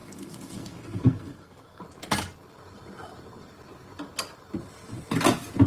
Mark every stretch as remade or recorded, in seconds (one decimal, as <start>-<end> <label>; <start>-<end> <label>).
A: 0.0-1.8 remade; 1.8-5.7 recorded